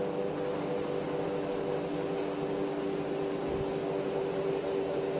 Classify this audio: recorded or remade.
recorded